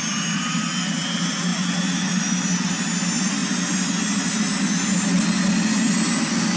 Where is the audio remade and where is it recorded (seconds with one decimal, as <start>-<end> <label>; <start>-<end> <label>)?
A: 0.0-6.6 recorded